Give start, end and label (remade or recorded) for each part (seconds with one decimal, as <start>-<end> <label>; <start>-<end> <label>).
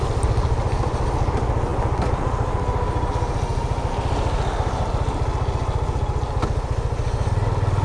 0.0-7.8 recorded